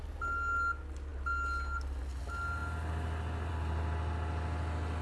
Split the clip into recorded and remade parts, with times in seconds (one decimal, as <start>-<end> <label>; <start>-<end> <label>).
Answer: 0.0-5.0 recorded